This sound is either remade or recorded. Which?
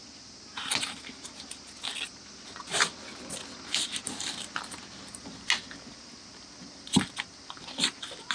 recorded